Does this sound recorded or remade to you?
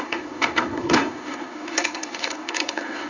remade